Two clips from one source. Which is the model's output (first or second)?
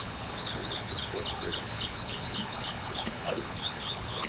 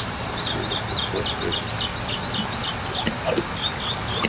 first